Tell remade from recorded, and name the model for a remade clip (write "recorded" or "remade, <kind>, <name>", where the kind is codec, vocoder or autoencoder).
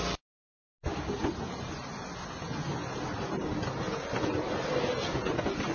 recorded